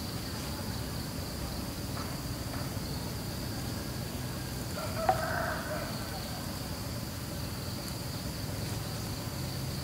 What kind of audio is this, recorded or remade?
recorded